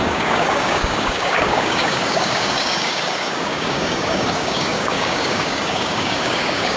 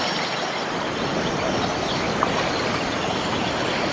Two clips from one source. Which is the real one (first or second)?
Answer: second